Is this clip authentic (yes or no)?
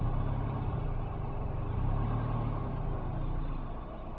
yes